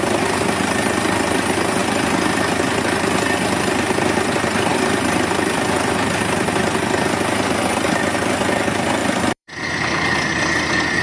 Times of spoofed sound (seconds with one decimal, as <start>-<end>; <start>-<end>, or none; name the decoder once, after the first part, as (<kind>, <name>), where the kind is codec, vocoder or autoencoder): 4.7-6.2 (vocoder, BigVGAN v2); 9.0-10.5